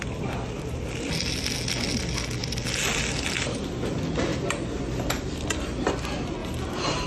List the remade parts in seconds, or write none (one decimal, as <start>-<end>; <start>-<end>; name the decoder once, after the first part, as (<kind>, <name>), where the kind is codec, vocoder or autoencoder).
none

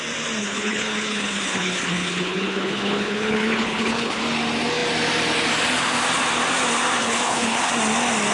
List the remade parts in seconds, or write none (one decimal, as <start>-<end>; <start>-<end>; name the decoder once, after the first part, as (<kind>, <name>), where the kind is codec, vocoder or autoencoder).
0.4-4.2 (codec, HILCodec); 7.0-7.7

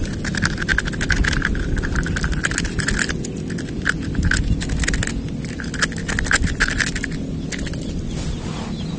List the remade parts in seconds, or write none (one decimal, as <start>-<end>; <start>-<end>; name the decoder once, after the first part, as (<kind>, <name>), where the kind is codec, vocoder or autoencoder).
none

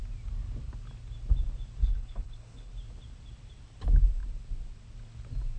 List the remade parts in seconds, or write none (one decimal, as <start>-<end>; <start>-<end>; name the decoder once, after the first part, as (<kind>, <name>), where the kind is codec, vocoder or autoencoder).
1.8-2.7 (codec, HILCodec)

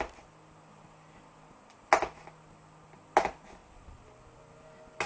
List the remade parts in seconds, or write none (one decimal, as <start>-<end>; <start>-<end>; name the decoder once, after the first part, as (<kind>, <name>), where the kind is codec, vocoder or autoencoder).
none

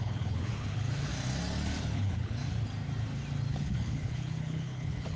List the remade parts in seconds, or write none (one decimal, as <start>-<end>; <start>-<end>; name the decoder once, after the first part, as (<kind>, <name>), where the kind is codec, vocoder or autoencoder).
0.0-1.1 (codec, HILCodec); 1.8-2.4; 3.5-5.2

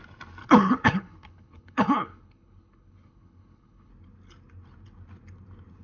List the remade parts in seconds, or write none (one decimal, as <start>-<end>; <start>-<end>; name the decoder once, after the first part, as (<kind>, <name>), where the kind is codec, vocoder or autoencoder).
0.4-3.9 (codec, HILCodec)